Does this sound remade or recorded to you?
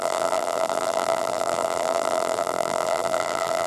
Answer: remade